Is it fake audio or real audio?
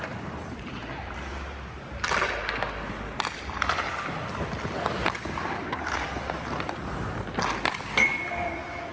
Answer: real